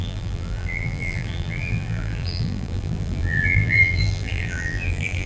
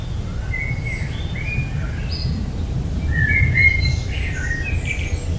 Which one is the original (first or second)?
second